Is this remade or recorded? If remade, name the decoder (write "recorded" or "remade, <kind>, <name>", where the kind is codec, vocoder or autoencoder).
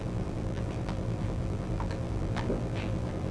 remade, vocoder, BigVGAN v2